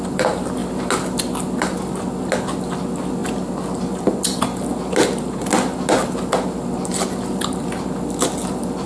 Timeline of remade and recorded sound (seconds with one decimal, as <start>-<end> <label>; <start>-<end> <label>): 0.0-8.9 recorded

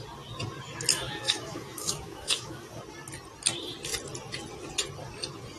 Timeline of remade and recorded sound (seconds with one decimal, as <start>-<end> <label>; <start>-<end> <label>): 0.0-0.9 recorded; 0.9-2.8 remade; 2.8-5.6 recorded